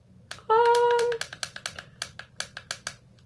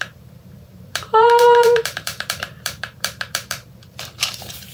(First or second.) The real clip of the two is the first